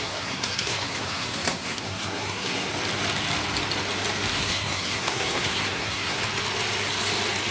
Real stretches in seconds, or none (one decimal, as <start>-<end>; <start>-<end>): 2.7-4.3; 6.2-7.5